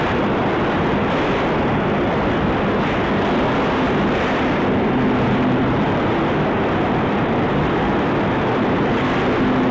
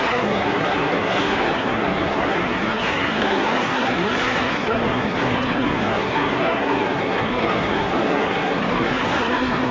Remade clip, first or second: second